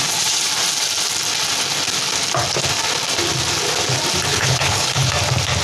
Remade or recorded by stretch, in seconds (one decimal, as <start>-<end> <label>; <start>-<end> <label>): 0.0-4.3 recorded; 4.3-5.1 remade; 5.1-5.6 recorded